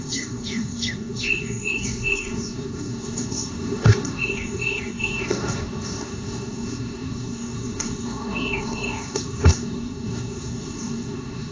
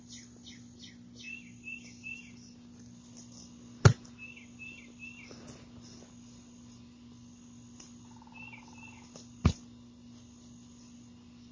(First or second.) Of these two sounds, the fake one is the first